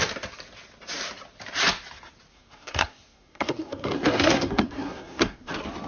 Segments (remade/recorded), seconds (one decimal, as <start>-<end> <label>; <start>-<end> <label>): 0.0-2.3 recorded; 2.3-5.5 remade; 5.5-5.9 recorded

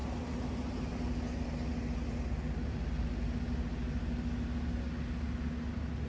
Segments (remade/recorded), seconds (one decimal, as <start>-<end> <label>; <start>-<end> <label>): 0.0-6.1 recorded

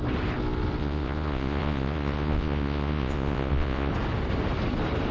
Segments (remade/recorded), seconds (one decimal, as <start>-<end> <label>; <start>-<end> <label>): 0.0-0.8 recorded; 0.8-3.9 remade; 3.9-5.1 recorded

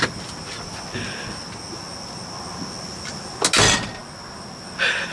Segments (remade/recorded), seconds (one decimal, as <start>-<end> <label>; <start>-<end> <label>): 0.0-5.1 recorded

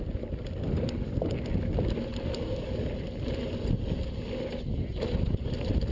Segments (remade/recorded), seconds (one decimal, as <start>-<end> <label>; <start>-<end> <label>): 0.0-5.9 recorded